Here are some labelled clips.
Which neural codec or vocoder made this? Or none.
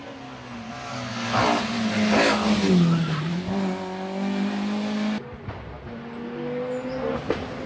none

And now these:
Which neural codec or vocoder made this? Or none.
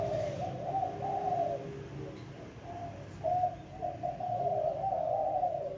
none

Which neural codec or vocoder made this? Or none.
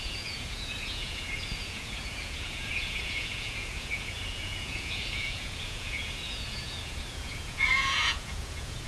vocoder, Vocos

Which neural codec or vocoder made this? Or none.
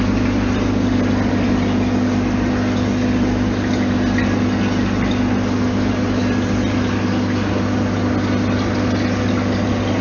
none